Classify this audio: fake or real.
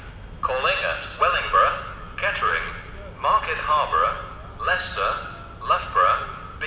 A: real